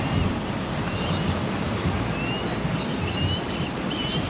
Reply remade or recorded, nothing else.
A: recorded